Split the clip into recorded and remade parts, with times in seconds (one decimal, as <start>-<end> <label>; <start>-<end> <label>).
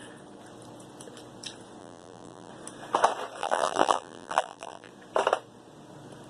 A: 0.0-1.8 recorded; 1.8-2.5 remade; 2.5-3.4 recorded; 3.4-4.9 remade; 4.9-6.3 recorded